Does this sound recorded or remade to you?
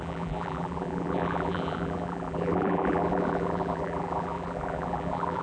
remade